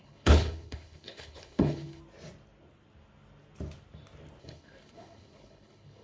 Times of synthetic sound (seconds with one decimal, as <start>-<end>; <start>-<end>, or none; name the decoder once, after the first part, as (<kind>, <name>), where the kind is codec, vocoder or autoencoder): 0.0-2.0 (codec, HILCodec); 4.4-6.0